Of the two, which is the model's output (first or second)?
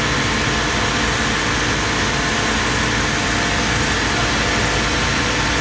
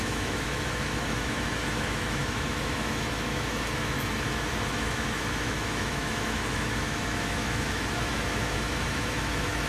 second